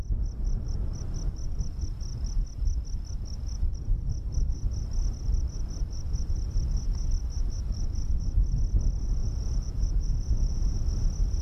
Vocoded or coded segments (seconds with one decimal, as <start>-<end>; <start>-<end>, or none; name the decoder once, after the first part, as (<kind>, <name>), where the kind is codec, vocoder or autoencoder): 9.2-10.6 (vocoder, Vocos)